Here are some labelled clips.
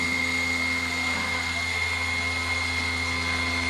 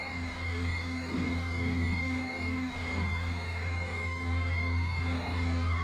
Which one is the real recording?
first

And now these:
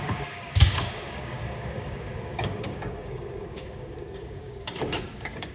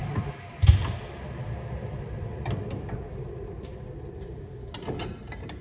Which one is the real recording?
second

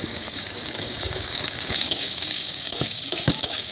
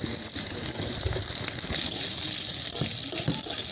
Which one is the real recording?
second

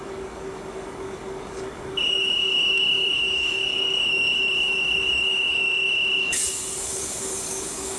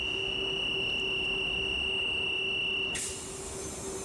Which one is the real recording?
second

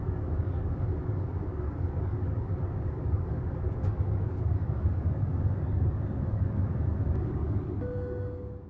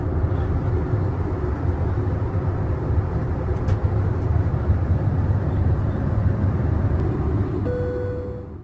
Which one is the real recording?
second